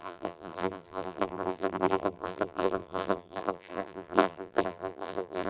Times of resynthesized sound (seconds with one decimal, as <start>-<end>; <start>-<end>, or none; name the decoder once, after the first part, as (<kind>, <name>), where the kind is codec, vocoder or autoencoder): 0.0-5.5 (vocoder, BigVGAN v2)